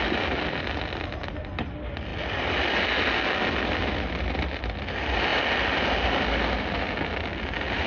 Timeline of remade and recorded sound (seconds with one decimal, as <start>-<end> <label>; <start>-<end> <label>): 0.0-7.9 recorded